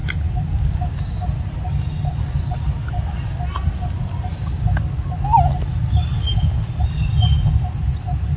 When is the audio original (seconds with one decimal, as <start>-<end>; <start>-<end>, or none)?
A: 0.0-8.4